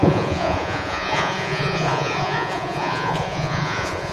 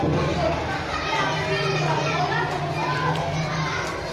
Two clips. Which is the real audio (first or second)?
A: second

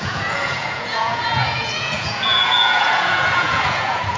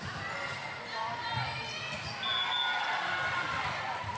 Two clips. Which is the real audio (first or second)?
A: second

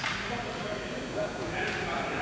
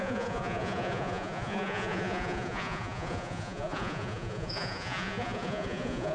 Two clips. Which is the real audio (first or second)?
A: first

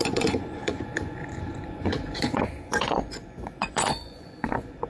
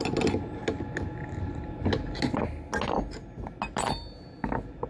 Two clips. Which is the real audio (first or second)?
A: second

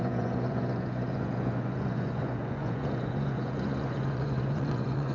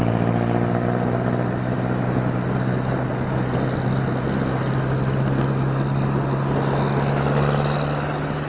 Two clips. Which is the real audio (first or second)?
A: second